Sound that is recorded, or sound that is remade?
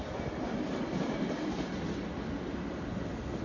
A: recorded